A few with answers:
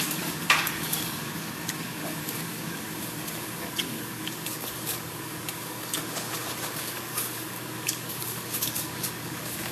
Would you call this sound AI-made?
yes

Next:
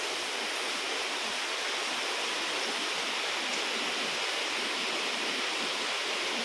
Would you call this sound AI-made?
no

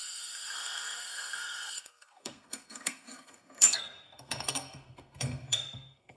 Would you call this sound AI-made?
yes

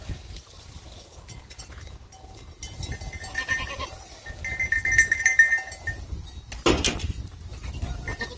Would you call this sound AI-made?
no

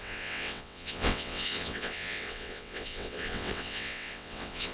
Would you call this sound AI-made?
yes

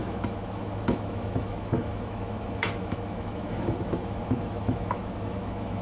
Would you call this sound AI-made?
yes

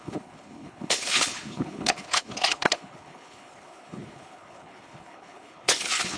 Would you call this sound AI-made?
yes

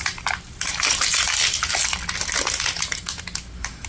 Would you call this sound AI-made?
no